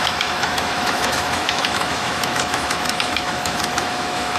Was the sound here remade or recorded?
remade